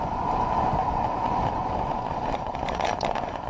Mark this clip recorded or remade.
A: remade